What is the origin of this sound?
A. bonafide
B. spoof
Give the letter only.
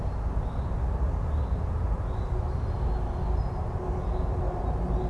A